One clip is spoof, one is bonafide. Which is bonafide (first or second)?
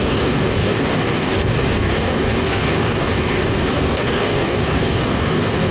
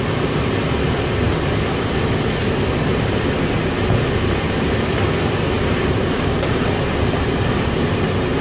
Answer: second